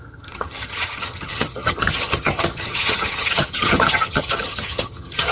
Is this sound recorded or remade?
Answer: remade